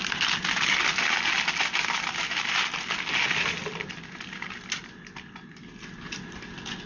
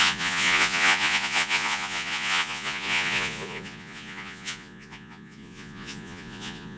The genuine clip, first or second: first